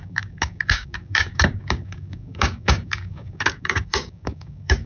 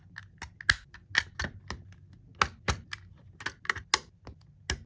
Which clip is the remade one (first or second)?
first